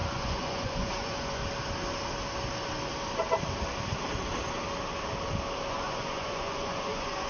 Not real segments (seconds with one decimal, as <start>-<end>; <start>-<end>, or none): 0.0-1.4; 5.7-7.3